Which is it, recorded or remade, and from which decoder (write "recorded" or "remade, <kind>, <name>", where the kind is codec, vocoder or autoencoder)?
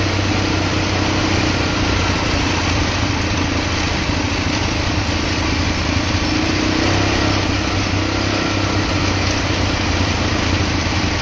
recorded